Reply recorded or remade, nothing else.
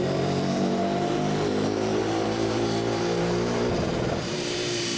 remade